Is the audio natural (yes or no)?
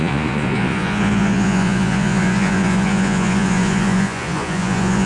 no